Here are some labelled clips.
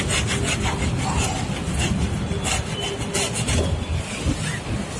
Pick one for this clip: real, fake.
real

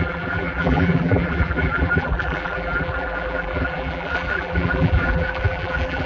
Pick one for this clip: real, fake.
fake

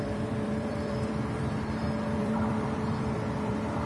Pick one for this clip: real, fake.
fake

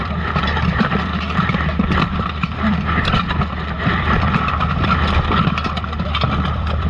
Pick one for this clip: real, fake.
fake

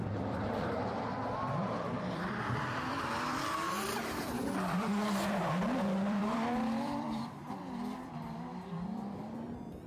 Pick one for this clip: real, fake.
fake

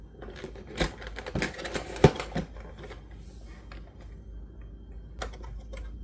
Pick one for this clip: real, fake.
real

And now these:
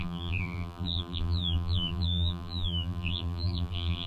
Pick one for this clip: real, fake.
fake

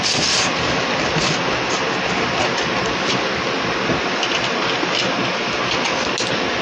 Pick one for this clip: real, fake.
real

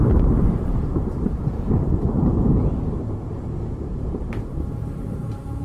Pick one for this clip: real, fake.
fake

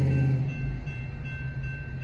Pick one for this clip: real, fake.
real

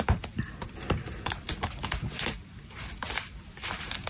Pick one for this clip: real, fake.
fake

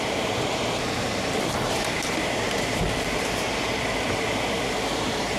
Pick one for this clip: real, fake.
fake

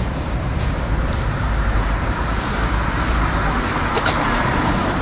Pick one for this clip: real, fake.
fake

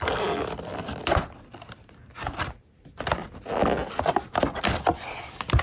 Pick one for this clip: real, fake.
real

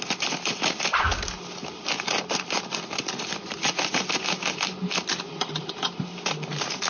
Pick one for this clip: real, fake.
real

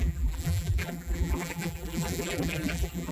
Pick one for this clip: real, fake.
fake